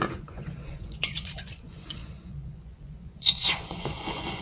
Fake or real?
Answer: fake